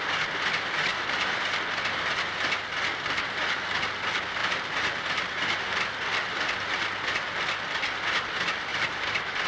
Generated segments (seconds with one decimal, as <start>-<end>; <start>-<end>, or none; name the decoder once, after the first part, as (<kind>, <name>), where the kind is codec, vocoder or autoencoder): 0.9-1.6 (vocoder, BigVGAN v2); 4.4-5.8